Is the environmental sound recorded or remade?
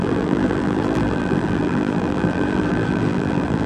remade